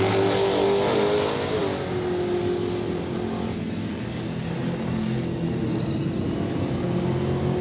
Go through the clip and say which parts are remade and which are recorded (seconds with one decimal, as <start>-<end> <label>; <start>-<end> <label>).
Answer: 0.0-7.6 recorded